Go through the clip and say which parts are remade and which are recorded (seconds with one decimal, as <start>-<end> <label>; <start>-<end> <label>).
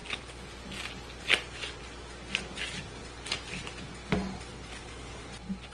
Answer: 0.0-4.7 recorded; 4.7-5.3 remade; 5.3-5.7 recorded